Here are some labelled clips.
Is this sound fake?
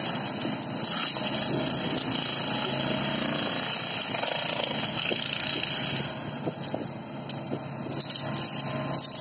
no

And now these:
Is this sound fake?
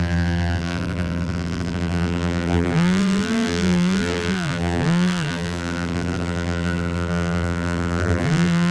yes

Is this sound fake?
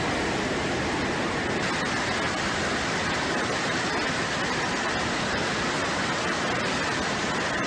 no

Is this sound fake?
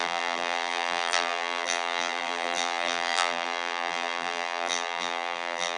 yes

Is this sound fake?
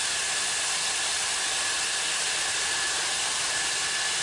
no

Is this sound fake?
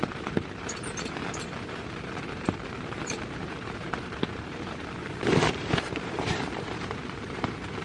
yes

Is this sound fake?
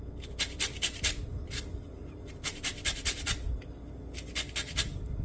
no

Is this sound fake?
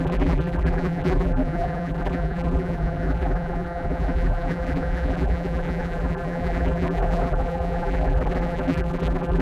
yes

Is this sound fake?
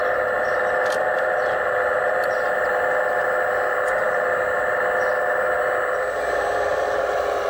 no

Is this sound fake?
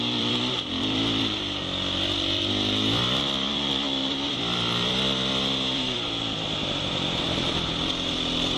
yes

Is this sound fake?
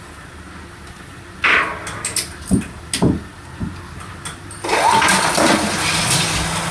no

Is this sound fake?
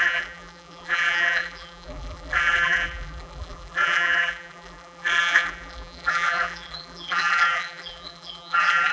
yes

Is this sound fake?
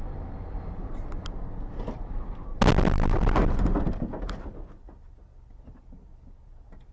no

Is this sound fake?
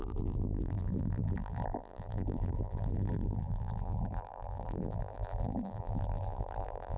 yes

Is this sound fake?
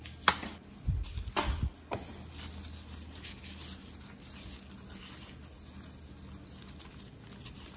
no